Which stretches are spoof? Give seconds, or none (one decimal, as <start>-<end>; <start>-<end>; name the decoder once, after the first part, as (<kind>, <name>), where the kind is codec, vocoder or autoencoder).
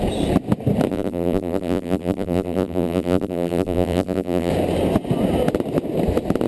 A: 0.9-4.5 (vocoder, BigVGAN v2)